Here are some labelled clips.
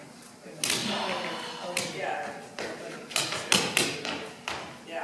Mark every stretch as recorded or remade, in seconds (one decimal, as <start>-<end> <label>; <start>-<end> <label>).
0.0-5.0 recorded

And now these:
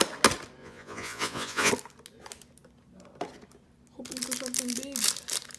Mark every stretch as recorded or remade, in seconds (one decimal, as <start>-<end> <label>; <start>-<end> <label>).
0.0-0.6 recorded; 0.6-1.7 remade; 1.7-5.6 recorded

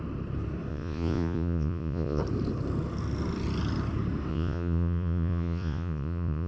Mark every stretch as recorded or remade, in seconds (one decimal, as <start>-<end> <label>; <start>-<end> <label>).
0.0-0.7 recorded; 0.7-2.2 remade; 2.2-4.3 recorded; 4.3-6.5 remade

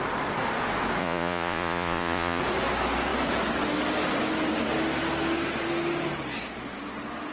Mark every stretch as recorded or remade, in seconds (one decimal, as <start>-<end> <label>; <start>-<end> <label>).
0.0-1.0 recorded; 1.0-2.4 remade; 2.4-7.3 recorded

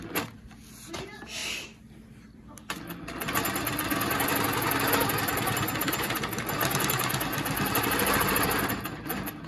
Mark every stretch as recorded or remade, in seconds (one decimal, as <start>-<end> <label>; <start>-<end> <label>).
0.0-9.5 recorded

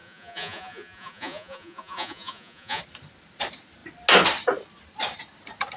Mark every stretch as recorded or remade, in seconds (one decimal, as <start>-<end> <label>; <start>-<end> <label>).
0.0-2.8 remade; 2.8-5.8 recorded

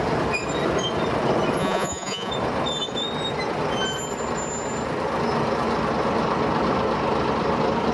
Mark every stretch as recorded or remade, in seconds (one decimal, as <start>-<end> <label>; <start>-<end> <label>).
0.0-1.6 recorded; 1.6-2.3 remade; 2.3-7.9 recorded